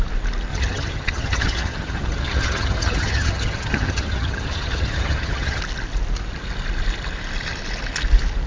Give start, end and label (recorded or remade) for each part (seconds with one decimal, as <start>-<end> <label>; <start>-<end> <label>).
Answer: 0.0-0.5 recorded; 0.5-5.6 remade; 5.6-8.5 recorded